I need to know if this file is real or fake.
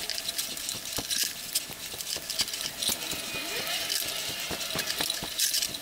real